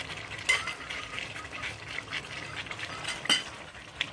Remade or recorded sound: recorded